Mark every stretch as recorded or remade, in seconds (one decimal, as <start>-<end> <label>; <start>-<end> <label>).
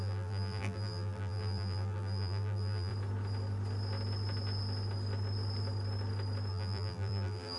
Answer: 0.0-2.9 remade; 2.9-6.5 recorded; 6.5-7.6 remade